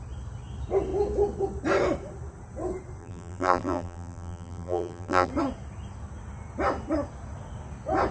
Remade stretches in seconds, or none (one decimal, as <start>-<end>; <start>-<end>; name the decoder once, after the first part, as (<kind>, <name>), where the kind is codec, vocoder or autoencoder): 3.0-5.3 (vocoder, BigVGAN v2)